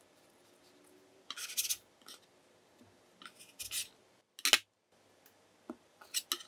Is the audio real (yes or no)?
yes